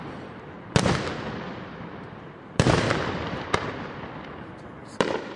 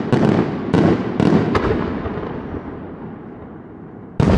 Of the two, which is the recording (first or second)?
second